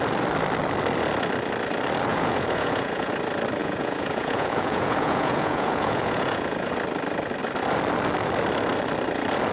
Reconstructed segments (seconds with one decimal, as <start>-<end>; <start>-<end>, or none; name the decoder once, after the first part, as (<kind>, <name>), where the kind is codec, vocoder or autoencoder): 2.1-3.1 (vocoder, Vocos); 3.6-6.7